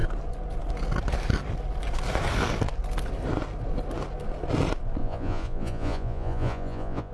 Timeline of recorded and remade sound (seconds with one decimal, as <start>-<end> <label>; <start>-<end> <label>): 0.0-5.0 recorded; 5.0-7.1 remade